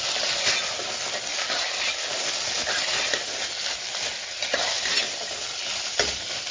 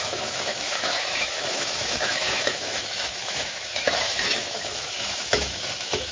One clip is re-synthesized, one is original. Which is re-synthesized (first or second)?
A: second